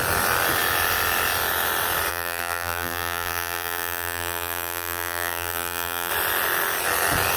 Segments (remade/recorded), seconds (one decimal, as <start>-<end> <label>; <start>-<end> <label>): 0.0-2.1 recorded; 2.1-6.1 remade; 6.1-7.4 recorded